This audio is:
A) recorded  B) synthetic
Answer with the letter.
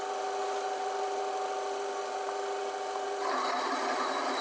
A